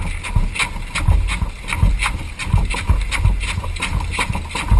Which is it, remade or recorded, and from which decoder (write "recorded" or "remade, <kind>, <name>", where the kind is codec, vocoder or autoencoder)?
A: recorded